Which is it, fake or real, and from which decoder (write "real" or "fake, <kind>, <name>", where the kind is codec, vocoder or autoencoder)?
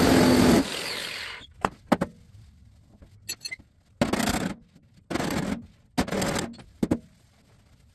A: real